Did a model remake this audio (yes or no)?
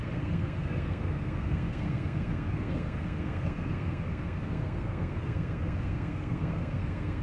yes